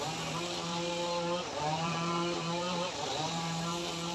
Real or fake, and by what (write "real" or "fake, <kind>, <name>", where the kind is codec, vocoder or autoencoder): fake, vocoder, BigVGAN v2